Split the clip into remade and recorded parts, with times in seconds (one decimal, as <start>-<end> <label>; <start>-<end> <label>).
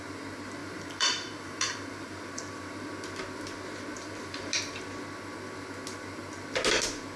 0.0-0.6 recorded; 0.6-2.9 remade; 2.9-3.9 recorded; 3.9-4.8 remade; 4.8-7.2 recorded